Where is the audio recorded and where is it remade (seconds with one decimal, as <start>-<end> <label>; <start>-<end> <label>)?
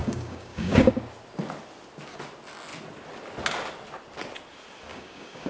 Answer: 0.0-0.9 remade; 0.9-4.9 recorded; 4.9-5.5 remade